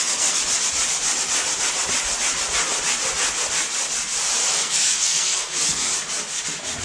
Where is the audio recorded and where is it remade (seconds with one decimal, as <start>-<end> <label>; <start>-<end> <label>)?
0.0-0.4 remade; 0.4-4.5 recorded; 4.5-5.9 remade; 5.9-6.8 recorded